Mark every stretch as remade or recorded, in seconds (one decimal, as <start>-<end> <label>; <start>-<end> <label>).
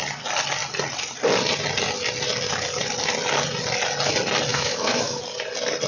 0.0-4.5 recorded; 4.5-5.2 remade; 5.2-5.9 recorded